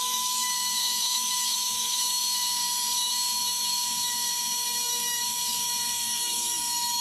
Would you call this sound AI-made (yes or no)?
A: yes